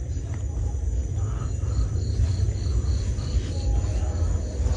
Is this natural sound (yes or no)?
yes